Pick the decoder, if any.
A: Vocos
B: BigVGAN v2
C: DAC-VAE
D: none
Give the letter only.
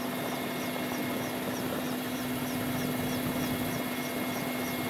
D